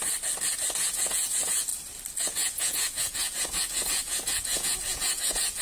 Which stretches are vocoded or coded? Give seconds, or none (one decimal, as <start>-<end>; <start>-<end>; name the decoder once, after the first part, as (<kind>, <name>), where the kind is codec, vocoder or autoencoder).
0.8-1.7 (vocoder, Vocos); 2.2-5.6